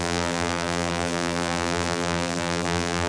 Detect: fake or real fake